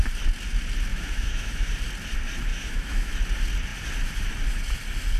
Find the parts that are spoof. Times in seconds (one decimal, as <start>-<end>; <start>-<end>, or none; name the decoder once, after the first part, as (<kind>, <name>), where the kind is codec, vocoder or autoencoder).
0.9-1.7 (autoencoder, DAC-VAE); 2.5-3.1